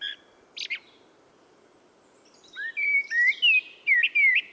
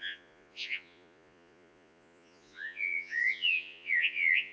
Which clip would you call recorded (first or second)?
first